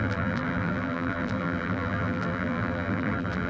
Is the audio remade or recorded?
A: remade